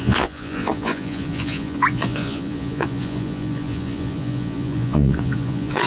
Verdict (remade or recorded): remade